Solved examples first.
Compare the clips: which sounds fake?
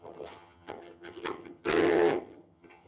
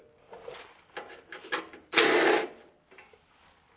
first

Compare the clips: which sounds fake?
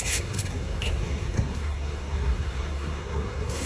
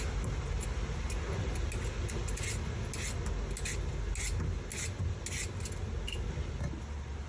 first